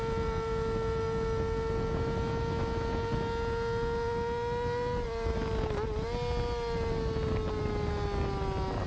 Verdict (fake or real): real